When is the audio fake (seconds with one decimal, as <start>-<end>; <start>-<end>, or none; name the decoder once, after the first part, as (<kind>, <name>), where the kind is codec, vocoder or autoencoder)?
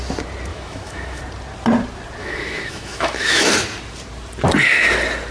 0.5-1.2 (autoencoder, DAC-VAE); 2.2-3.5